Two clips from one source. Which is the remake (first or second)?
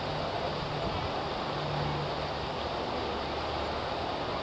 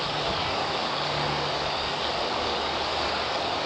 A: second